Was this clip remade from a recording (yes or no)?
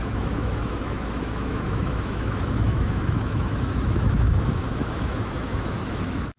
yes